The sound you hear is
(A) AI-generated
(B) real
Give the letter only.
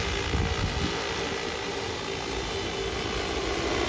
B